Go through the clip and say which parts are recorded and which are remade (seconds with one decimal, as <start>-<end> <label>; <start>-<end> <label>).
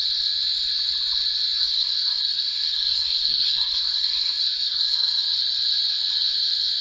0.0-1.6 recorded; 1.6-5.2 remade; 5.2-6.8 recorded